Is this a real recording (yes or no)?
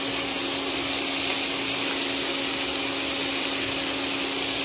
yes